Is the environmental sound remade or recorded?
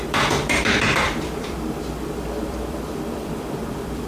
remade